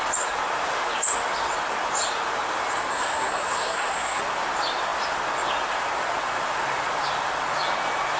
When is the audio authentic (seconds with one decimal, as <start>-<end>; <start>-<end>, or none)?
0.0-2.9; 4.2-8.2